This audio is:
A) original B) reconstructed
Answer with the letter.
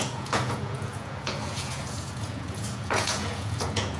B